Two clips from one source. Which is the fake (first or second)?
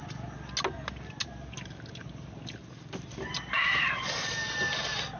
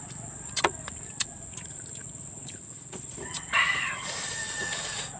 second